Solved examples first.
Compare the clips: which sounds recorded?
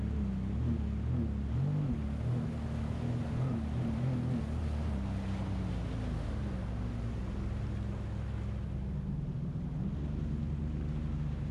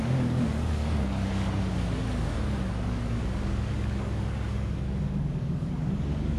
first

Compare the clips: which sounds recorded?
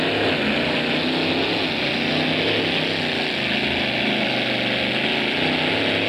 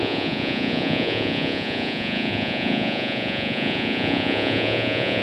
first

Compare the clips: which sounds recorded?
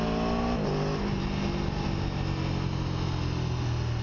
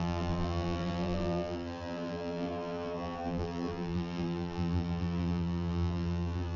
first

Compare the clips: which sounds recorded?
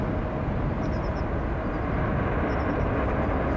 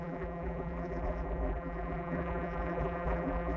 first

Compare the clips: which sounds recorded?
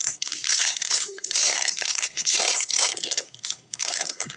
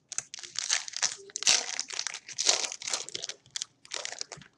second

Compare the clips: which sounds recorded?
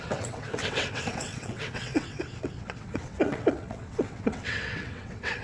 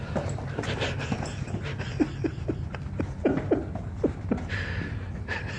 second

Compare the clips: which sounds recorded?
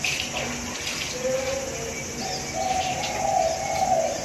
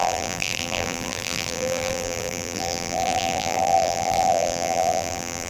first